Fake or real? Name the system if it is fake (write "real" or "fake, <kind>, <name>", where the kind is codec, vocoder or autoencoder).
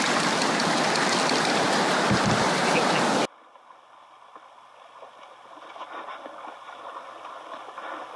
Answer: real